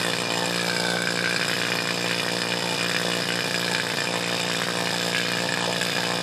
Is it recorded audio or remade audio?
recorded